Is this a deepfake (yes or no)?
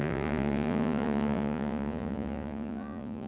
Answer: yes